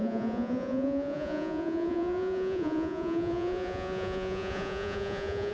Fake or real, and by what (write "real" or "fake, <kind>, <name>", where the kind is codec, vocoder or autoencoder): fake, vocoder, Vocos